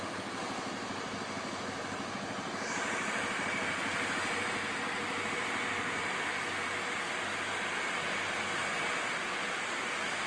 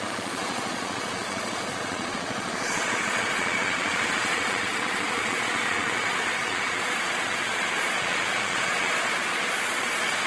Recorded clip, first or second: first